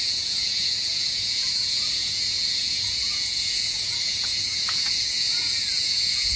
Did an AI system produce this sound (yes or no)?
yes